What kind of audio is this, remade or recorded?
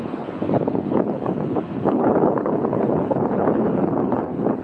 remade